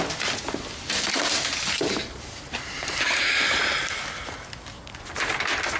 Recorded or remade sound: recorded